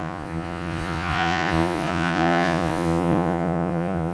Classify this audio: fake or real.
fake